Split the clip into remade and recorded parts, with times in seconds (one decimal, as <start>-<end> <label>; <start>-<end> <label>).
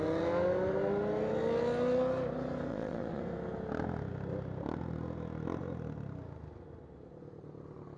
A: 0.0-2.7 recorded; 2.7-3.2 remade; 3.2-8.0 recorded